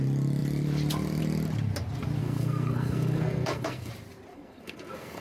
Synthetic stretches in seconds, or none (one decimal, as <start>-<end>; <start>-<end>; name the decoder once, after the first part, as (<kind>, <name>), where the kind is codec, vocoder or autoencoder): 2.2-3.9 (codec, SNAC); 4.3-5.2